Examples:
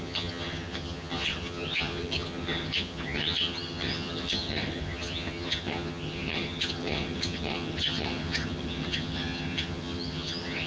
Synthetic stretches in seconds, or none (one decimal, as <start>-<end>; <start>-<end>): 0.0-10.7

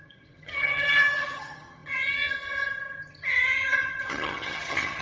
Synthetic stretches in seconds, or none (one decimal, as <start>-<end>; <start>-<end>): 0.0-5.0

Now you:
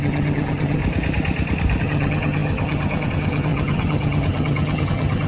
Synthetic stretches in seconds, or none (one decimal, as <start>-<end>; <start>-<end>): 0.0-0.8; 1.8-5.3

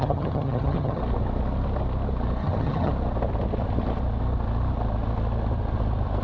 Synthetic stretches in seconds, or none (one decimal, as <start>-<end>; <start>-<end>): 0.0-1.0; 2.4-2.9

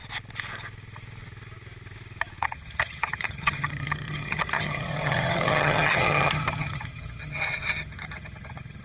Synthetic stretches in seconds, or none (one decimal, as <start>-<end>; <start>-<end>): 2.4-8.8

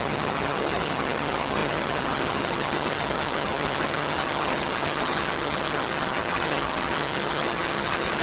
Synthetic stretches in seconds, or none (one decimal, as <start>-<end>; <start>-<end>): 0.0-8.2

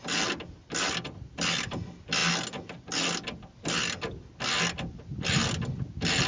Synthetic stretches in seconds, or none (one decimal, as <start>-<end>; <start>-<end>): none

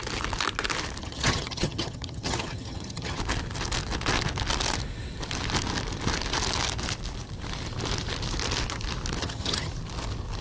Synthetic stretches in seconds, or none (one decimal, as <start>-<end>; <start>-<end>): 1.0-3.2; 9.2-9.7